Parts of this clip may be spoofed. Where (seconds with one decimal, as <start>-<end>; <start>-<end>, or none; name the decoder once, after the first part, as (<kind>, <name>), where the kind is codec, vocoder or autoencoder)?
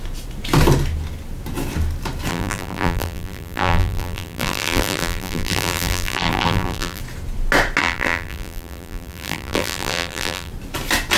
2.3-7.0 (vocoder, BigVGAN v2); 7.8-10.5